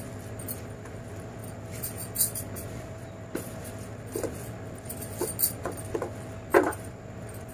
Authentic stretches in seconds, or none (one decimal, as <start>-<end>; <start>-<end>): 0.0-6.5; 7.0-7.5